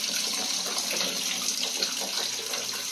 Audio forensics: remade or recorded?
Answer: recorded